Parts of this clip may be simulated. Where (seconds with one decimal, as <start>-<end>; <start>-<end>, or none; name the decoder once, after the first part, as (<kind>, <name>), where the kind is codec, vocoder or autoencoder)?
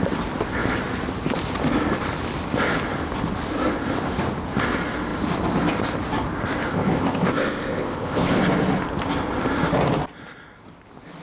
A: 6.7-8.4 (codec, ZipCodec)